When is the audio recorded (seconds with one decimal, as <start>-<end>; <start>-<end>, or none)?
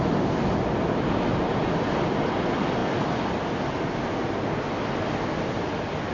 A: 0.0-6.1